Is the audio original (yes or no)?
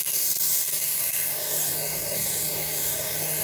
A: no